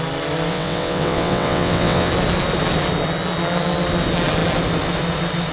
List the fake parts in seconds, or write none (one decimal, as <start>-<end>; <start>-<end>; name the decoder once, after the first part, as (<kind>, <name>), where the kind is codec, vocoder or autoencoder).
0.5-2.1 (vocoder, WaveNeXt)